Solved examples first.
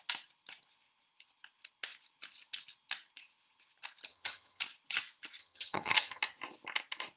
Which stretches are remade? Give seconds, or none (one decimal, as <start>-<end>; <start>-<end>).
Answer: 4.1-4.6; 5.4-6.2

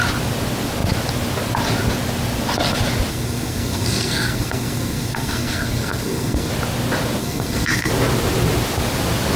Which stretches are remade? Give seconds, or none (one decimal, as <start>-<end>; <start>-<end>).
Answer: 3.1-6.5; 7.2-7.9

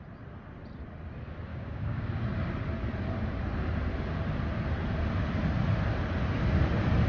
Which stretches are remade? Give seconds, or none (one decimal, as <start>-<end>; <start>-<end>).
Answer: 1.5-2.1

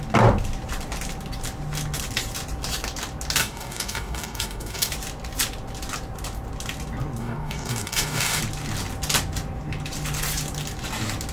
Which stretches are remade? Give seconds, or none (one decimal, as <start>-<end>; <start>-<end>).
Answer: 3.4-4.9; 7.2-8.4

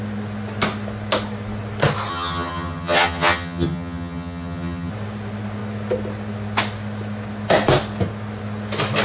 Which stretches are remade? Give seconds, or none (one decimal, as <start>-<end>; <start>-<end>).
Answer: 2.1-4.9

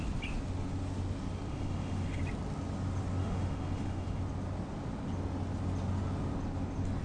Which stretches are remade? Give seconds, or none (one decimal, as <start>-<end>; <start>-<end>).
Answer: 1.5-2.2; 3.2-4.2

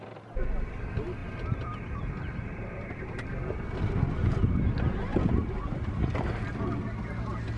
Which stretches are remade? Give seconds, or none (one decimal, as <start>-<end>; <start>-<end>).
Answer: 5.4-6.5

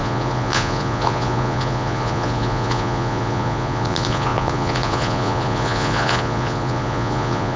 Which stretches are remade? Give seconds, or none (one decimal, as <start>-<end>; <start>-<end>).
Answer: 0.0-7.6